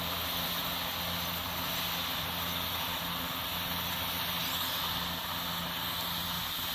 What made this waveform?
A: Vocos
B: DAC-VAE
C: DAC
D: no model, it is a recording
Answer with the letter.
D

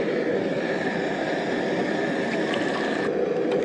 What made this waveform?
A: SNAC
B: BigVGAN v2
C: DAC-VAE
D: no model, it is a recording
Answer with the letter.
B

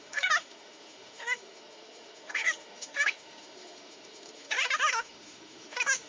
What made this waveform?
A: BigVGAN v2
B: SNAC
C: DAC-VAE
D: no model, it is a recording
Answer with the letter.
C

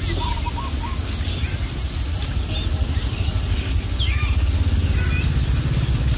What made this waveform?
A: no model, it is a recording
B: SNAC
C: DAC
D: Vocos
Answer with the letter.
A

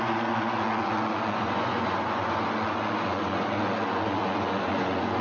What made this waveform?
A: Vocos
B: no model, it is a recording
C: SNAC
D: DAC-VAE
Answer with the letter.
A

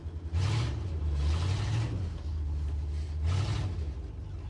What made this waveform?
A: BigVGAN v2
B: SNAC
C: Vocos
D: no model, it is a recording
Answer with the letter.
D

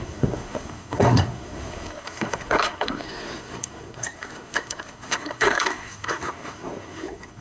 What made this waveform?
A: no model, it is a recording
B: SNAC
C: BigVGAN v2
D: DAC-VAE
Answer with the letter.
B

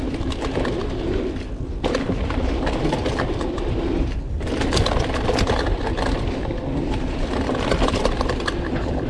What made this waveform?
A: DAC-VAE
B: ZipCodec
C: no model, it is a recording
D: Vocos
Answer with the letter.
C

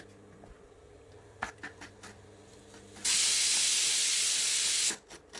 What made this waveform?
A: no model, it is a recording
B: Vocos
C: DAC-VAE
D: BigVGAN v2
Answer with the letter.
A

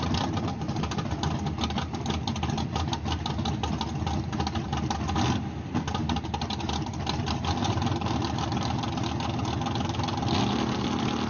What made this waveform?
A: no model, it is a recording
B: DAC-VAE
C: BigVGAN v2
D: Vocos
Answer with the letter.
A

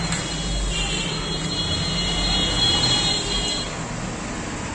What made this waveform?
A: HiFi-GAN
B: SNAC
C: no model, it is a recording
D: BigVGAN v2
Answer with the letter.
C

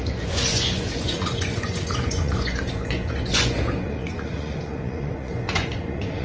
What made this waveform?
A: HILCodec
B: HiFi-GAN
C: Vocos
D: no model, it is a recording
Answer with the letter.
C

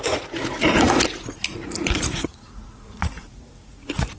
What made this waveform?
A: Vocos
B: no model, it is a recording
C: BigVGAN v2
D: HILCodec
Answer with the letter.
A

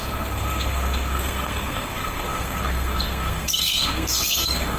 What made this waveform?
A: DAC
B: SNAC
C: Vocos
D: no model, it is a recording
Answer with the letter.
B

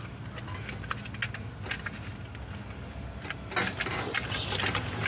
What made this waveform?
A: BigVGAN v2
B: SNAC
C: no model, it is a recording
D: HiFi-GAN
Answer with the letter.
C